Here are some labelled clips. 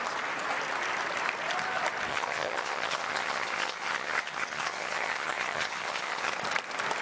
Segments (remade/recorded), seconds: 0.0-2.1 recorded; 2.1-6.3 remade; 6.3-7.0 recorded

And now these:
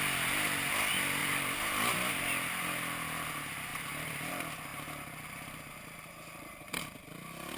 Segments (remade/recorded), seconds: 0.0-1.2 recorded; 1.2-2.2 remade; 2.2-3.7 recorded; 3.7-4.3 remade; 4.3-7.6 recorded